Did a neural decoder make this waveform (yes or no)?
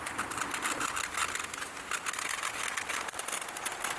no